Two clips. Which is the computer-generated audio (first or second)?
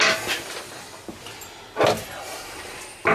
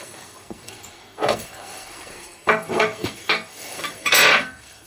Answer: second